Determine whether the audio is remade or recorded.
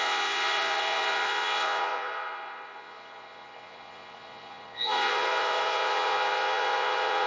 remade